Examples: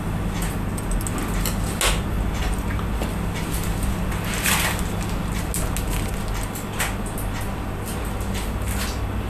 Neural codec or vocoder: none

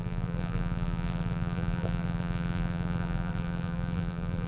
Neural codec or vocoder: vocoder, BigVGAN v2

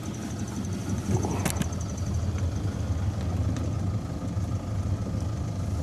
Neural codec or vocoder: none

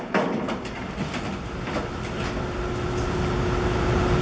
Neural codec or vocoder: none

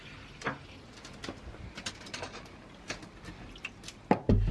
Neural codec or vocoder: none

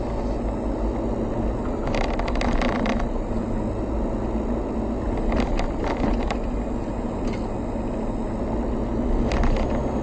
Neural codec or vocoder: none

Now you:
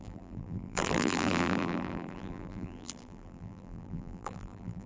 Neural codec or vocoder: vocoder, BigVGAN v2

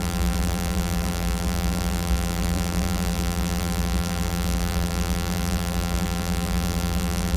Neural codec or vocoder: vocoder, BigVGAN v2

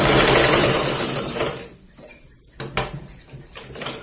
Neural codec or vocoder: vocoder, BigVGAN v2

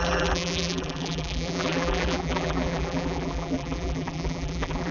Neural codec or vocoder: vocoder, BigVGAN v2